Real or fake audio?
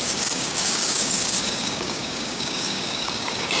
fake